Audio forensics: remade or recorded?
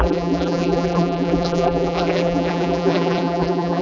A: remade